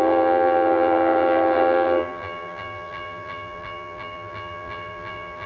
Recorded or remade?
remade